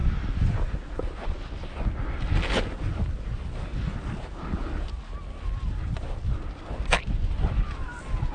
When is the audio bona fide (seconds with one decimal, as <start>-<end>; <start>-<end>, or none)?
0.0-8.3